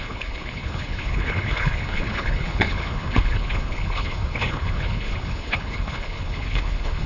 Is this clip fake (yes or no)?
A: yes